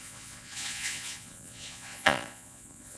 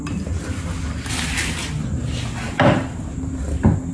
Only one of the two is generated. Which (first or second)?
first